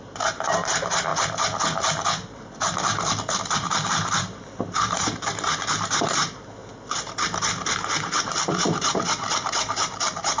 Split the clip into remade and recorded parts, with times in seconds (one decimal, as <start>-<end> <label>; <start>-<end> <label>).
0.0-1.1 remade; 1.1-3.9 recorded; 3.9-6.6 remade; 6.6-8.5 recorded; 8.5-10.4 remade